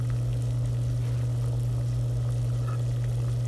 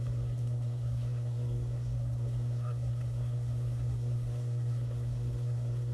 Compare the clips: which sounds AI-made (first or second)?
second